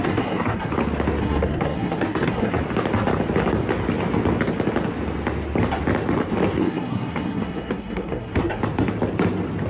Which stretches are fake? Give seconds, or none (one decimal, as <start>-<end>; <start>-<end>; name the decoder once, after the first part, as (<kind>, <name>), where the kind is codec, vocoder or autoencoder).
0.0-0.7 (codec, SNAC); 1.2-2.6; 6.6-8.6